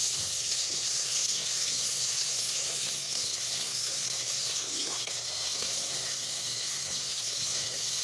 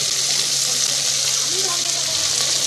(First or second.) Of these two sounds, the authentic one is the second